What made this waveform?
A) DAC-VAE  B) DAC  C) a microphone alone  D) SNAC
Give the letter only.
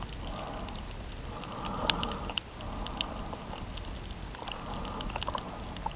C